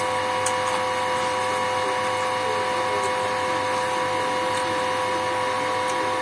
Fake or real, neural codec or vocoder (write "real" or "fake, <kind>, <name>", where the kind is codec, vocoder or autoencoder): real